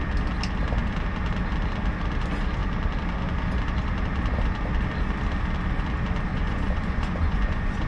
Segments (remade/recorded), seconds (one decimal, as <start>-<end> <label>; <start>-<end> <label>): 0.0-6.3 recorded; 6.3-7.9 remade